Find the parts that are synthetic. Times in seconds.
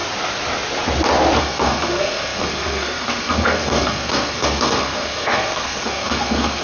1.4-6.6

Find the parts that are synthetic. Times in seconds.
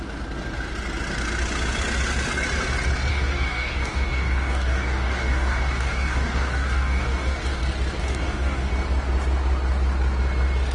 3.1-7.6; 8.0-8.7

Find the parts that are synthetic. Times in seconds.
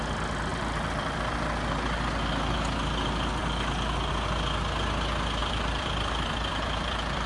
0.5-2.3; 5.4-7.3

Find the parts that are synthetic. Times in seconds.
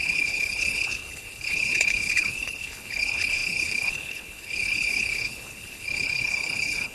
0.0-6.9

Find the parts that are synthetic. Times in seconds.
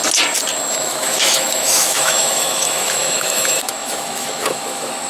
0.7-5.1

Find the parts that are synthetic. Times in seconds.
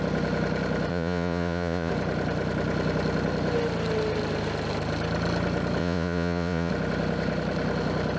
0.9-1.9; 5.8-6.7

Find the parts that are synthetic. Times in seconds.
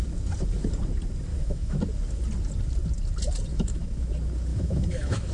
1.3-1.8; 3.5-4.1; 4.5-5.3